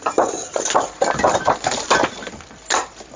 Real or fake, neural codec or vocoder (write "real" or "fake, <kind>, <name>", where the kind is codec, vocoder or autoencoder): real